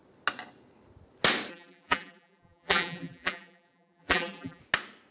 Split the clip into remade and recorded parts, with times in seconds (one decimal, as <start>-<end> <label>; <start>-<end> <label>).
0.0-1.5 recorded; 1.5-4.6 remade; 4.6-5.1 recorded